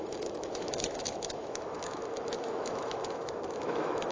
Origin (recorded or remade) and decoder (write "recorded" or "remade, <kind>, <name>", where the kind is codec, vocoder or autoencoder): remade, autoencoder, DAC-VAE